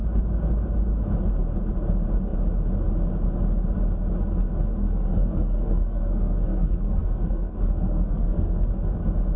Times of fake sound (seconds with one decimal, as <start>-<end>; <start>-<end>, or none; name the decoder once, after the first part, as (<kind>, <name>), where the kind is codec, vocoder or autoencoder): 4.8-8.7 (codec, SNAC)